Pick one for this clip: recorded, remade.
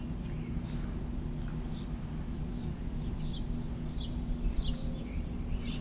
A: recorded